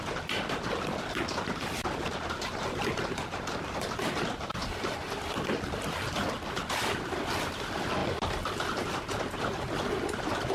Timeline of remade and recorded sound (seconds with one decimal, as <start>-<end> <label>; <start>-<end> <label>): 0.0-10.5 recorded